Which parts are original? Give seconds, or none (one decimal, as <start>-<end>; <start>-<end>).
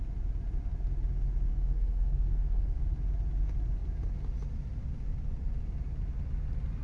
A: 0.0-1.5; 2.8-6.8